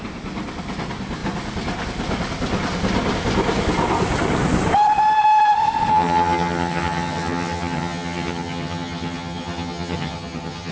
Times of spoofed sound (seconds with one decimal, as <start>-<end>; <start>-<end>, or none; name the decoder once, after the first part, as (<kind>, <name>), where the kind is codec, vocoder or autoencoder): 5.9-10.7 (vocoder, HiFi-GAN)

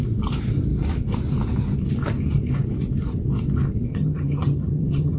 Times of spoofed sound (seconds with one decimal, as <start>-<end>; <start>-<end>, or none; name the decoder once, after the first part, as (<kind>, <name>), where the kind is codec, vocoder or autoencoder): 3.9-5.2 (vocoder, HiFi-GAN)

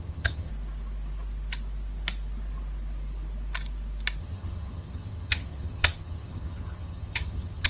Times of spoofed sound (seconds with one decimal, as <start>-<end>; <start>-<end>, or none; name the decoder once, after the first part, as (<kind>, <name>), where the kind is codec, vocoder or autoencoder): 0.0-0.5 (vocoder, HiFi-GAN); 4.2-7.7

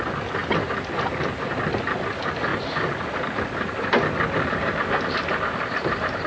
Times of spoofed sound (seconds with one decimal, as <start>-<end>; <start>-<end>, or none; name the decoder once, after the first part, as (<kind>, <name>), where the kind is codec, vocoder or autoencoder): none

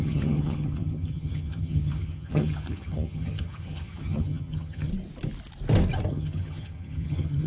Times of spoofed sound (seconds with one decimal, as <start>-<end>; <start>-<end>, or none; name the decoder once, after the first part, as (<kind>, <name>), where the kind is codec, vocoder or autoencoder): 0.0-4.9 (vocoder, HiFi-GAN); 6.1-7.5